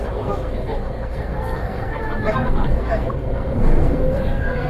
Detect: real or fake fake